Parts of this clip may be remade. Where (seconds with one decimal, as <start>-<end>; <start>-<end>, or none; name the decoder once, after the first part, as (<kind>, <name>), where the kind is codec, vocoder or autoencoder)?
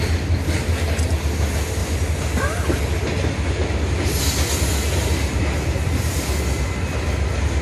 none